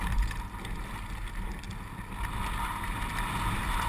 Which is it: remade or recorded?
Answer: recorded